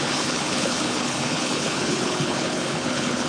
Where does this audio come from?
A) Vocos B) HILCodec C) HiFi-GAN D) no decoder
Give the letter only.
B